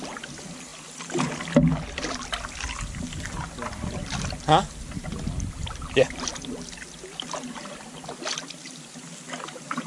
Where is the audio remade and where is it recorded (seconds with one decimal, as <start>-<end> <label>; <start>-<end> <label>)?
0.0-9.9 recorded